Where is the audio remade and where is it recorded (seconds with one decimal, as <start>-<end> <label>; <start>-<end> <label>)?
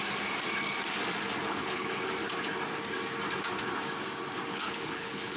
0.0-1.4 recorded; 1.4-2.0 remade; 2.0-4.5 recorded; 4.5-5.4 remade